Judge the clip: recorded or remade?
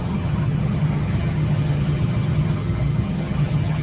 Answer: remade